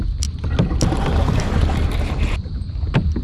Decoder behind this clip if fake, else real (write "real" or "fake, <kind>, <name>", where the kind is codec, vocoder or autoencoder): real